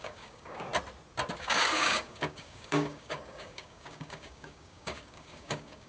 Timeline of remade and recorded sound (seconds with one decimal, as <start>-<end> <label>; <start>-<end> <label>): 0.0-0.7 remade; 0.7-1.4 recorded; 1.4-5.9 remade